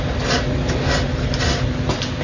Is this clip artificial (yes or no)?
no